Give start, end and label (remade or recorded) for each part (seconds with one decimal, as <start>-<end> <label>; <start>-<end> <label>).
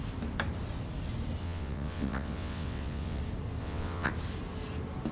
0.0-1.4 recorded; 1.4-3.2 remade; 3.2-3.6 recorded; 3.6-4.1 remade; 4.1-5.1 recorded